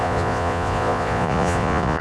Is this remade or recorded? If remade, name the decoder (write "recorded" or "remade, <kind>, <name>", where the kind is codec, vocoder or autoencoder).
remade, vocoder, Vocos